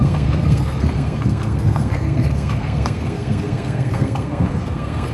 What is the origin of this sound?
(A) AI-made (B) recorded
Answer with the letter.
A